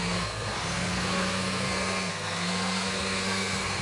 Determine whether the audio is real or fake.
fake